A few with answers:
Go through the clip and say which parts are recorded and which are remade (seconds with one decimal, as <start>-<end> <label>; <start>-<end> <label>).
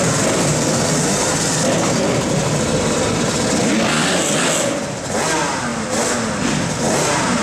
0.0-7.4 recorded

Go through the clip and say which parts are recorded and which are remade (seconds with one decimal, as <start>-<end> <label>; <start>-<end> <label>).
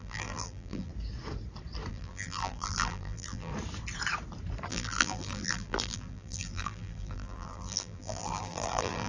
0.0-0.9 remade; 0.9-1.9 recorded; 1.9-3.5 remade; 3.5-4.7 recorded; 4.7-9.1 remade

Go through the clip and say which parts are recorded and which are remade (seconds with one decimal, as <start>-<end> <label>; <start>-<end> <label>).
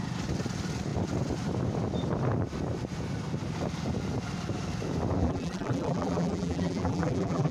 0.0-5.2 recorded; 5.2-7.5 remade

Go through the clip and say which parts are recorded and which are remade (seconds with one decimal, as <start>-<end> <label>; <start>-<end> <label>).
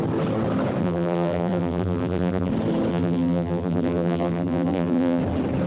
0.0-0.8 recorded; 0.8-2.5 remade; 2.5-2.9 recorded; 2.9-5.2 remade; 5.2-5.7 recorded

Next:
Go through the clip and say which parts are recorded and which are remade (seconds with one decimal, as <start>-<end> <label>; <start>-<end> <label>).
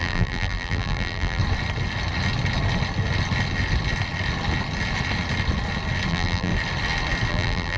0.0-1.4 remade; 1.4-6.1 recorded; 6.1-6.5 remade; 6.5-7.3 recorded; 7.3-7.8 remade